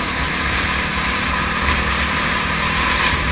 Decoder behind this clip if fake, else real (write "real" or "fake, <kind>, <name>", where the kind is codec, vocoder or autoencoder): real